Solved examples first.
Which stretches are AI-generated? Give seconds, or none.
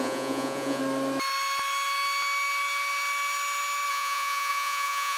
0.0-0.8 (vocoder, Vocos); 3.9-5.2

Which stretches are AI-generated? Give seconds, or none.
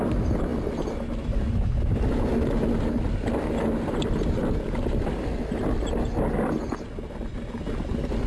none